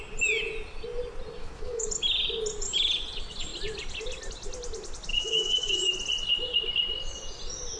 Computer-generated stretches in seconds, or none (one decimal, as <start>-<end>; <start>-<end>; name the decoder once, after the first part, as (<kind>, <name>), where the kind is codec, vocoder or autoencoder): 1.4-1.9 (autoencoder, DAC-VAE); 5.1-5.9